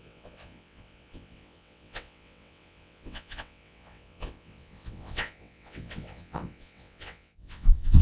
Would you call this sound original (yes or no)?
no